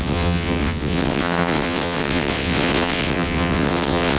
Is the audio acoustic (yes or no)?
no